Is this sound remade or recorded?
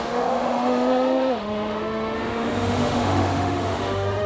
remade